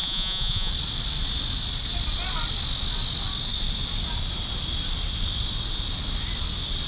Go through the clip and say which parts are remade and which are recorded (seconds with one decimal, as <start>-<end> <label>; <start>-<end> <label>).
0.0-0.7 remade; 0.7-6.9 recorded

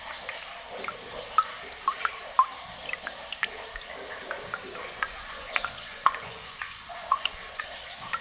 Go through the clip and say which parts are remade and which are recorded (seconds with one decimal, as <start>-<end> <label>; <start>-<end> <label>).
0.0-4.8 recorded; 4.8-7.6 remade; 7.6-8.2 recorded

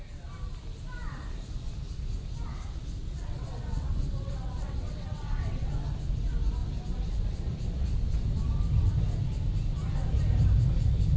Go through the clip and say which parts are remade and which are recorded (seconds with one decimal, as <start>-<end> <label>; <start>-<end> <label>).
0.0-3.0 recorded; 3.0-5.7 remade; 5.7-11.2 recorded